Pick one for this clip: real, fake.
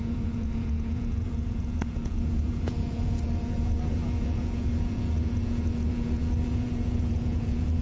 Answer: fake